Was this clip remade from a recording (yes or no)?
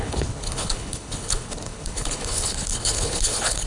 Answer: yes